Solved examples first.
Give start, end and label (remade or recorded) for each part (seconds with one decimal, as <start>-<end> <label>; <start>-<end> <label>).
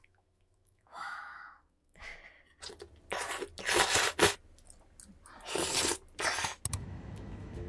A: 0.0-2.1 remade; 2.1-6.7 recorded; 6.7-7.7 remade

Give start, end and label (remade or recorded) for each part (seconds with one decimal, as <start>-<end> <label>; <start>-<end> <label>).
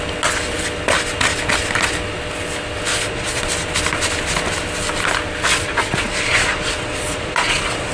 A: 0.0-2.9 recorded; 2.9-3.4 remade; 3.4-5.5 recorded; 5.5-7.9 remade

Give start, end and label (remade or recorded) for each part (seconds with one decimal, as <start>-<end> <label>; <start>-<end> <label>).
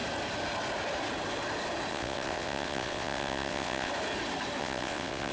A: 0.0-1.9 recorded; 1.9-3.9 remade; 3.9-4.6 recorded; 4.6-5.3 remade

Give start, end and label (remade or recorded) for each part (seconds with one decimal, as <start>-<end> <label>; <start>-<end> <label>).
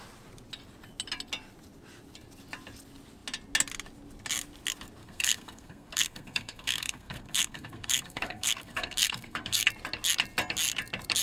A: 0.0-5.0 recorded; 5.0-9.7 remade; 9.7-11.2 recorded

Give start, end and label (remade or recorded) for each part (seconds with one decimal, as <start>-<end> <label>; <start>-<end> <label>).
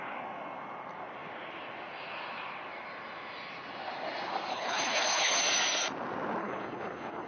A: 0.0-4.5 recorded; 4.5-5.4 remade; 5.4-6.4 recorded; 6.4-7.3 remade